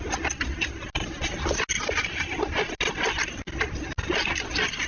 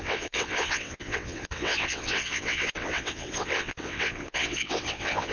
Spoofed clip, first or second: second